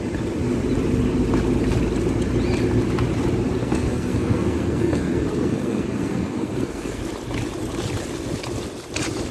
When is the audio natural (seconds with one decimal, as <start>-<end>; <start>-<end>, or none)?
0.0-3.6; 7.0-9.3